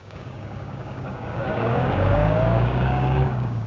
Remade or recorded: remade